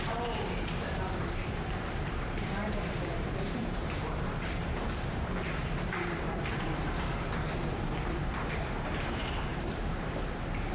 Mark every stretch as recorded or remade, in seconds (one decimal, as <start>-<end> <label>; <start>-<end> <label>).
0.0-10.7 remade

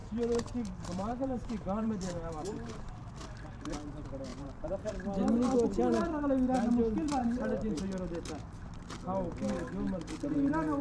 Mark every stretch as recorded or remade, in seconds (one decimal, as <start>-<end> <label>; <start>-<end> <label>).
0.0-3.1 remade; 3.1-4.3 recorded; 4.3-4.9 remade; 4.9-7.2 recorded; 7.2-7.8 remade; 7.8-10.8 recorded